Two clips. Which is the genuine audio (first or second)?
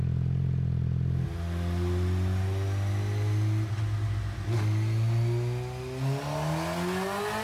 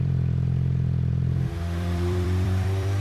first